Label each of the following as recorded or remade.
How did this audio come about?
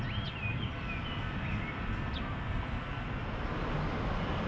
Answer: recorded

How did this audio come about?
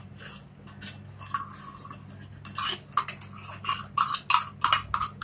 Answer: recorded